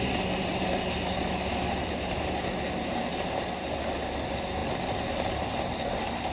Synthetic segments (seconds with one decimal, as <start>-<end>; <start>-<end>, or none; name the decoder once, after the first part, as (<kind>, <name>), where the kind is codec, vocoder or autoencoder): none